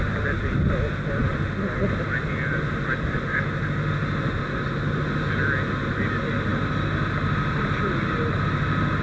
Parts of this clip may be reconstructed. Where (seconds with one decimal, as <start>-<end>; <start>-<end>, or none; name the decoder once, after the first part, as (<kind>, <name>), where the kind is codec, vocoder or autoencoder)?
none